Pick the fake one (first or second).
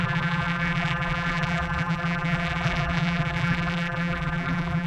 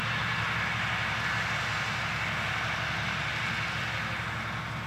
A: first